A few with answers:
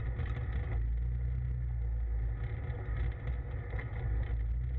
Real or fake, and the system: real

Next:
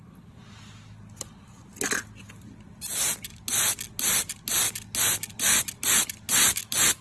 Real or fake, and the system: real